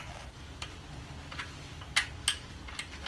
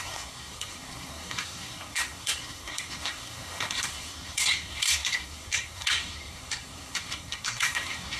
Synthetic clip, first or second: second